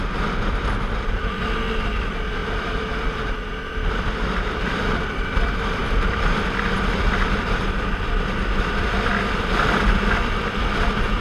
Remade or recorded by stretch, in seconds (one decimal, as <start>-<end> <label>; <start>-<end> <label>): 0.0-5.8 remade; 5.8-7.1 recorded; 7.1-11.2 remade